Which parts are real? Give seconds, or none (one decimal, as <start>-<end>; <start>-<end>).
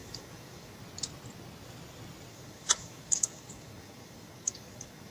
0.8-2.3